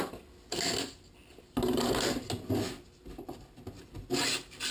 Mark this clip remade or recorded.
recorded